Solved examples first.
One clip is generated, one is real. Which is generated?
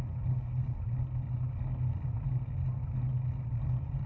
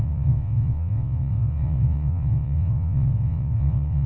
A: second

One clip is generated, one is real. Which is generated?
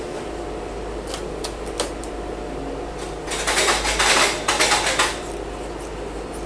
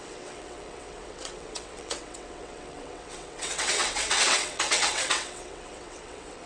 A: second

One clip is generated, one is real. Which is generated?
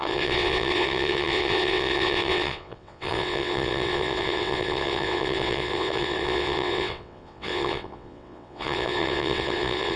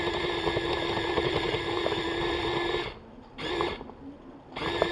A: first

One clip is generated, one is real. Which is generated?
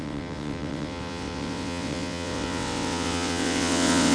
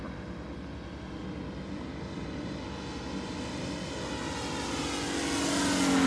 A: first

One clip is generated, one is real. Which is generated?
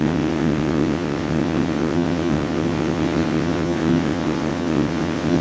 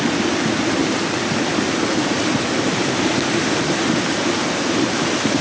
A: first